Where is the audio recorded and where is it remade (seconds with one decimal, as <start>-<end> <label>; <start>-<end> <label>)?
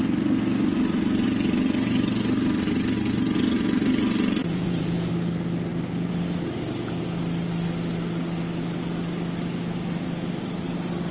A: 0.0-4.4 recorded; 4.4-5.1 remade; 5.1-11.1 recorded